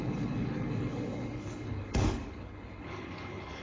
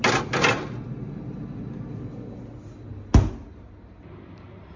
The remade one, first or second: first